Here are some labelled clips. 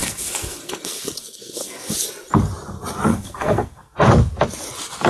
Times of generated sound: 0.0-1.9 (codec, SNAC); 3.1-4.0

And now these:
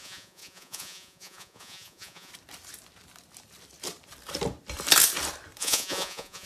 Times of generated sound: 0.0-2.3 (vocoder, Vocos); 5.6-6.5

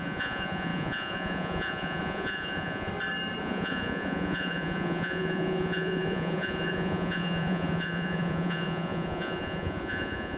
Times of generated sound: 0.0-2.9 (vocoder, Vocos); 3.4-10.4

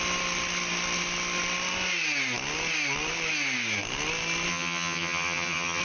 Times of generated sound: 4.5-5.8 (vocoder, HiFi-GAN)

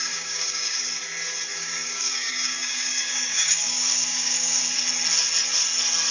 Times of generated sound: 0.0-0.8 (codec, DAC); 1.5-4.6

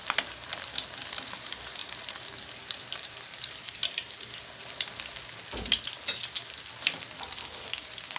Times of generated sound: 1.8-3.8 (vocoder, BigVGAN v2)

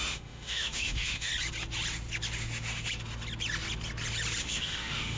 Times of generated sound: 0.0-1.3 (autoencoder, DAC-VAE); 4.4-5.2